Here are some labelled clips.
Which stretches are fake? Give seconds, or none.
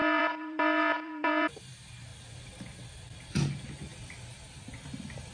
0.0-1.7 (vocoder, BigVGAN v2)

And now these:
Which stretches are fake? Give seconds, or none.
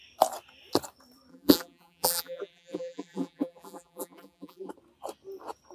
1.3-4.7 (vocoder, BigVGAN v2)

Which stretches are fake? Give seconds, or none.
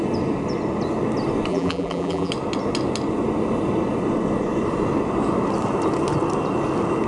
1.5-2.3 (vocoder, BigVGAN v2)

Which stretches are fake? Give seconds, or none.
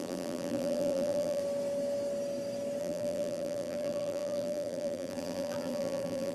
0.0-1.4 (vocoder, BigVGAN v2); 2.8-6.3